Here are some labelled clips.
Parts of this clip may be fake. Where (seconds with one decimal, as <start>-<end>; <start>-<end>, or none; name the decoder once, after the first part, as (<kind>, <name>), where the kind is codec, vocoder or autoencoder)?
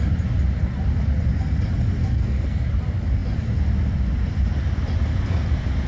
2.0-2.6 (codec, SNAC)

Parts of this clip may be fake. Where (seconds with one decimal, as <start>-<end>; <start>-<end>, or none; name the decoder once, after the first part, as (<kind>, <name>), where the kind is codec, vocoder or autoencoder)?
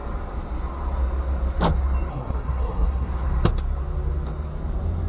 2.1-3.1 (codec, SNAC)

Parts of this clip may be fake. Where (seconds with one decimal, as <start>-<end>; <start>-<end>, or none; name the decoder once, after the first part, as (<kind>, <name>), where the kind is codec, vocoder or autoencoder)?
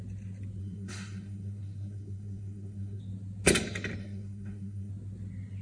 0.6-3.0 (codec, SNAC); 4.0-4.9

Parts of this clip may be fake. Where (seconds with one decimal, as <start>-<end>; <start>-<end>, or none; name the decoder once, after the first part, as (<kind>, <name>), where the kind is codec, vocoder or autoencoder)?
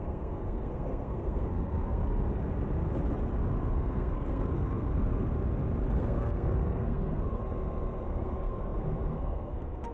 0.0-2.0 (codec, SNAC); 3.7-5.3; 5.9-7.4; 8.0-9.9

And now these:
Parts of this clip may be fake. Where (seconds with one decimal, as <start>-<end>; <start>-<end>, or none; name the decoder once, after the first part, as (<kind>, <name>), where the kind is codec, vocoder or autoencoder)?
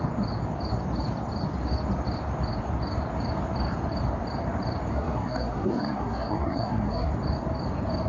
4.9-7.1 (codec, SNAC)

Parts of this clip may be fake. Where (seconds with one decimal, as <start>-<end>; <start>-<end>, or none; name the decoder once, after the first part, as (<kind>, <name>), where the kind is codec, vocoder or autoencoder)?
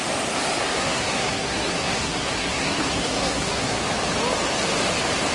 0.6-3.8 (codec, SNAC)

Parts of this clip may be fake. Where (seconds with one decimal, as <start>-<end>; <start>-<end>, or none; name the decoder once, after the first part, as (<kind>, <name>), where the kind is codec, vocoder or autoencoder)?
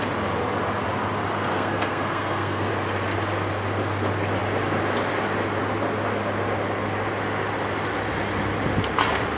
1.5-2.7 (codec, SNAC)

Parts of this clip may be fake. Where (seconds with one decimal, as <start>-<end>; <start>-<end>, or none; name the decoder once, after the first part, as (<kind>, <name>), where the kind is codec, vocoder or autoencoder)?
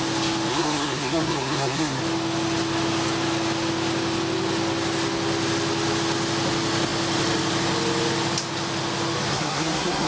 0.5-2.0 (codec, SNAC); 9.3-10.1